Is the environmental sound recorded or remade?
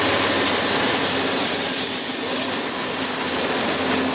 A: recorded